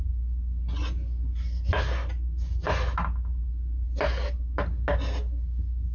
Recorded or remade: recorded